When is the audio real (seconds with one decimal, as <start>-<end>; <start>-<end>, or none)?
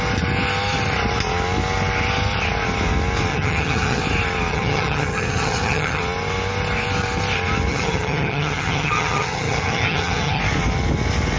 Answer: 0.0-3.3; 4.0-4.5; 6.0-7.7; 10.4-11.4